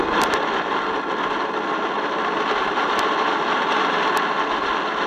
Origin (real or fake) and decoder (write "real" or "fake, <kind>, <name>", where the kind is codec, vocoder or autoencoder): real